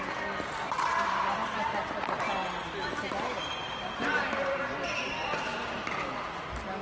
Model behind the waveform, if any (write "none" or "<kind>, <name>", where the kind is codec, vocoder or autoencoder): none